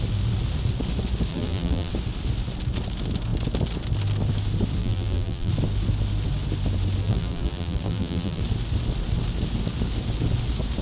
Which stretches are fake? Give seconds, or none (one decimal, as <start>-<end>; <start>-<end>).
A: 1.3-1.9; 4.8-5.5; 7.0-8.4